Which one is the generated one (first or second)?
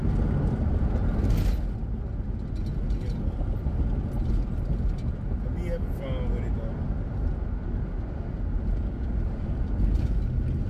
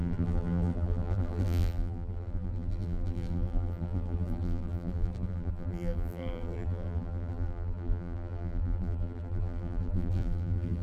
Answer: second